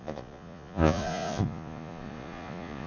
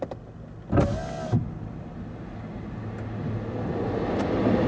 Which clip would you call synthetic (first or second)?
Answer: first